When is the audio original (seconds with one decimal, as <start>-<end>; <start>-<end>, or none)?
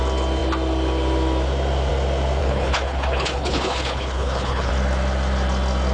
0.0-2.4; 4.7-5.9